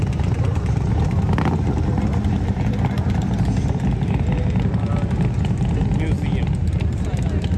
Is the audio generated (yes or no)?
no